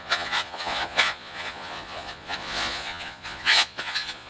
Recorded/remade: remade